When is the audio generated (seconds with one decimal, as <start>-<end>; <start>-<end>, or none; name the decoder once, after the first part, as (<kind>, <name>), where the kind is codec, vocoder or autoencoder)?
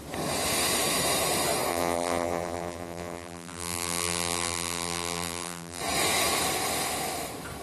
1.7-5.8 (vocoder, BigVGAN v2)